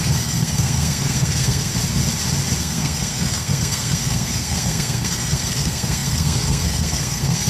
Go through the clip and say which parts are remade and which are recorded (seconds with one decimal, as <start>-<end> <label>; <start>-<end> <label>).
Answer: 0.0-1.7 remade; 1.7-2.6 recorded; 2.6-7.5 remade